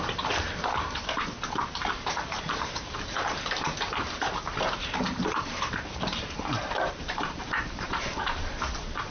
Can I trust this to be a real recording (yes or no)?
no